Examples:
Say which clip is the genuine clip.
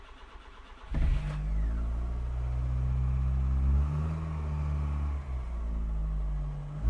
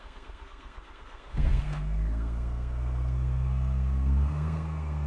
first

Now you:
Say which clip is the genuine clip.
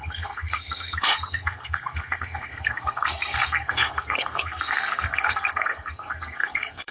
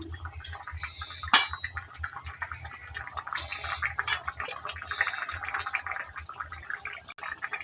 second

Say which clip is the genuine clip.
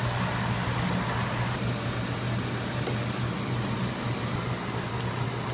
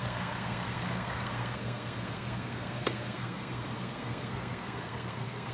first